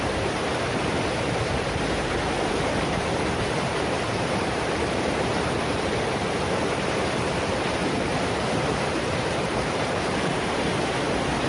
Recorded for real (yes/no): no